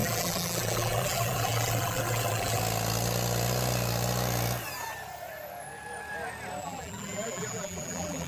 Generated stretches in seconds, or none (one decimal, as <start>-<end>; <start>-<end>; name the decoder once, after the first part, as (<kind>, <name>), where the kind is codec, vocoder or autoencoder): 0.0-2.6 (vocoder, BigVGAN v2); 6.6-8.3